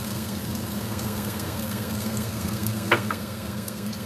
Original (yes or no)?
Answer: no